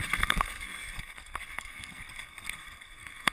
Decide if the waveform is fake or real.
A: fake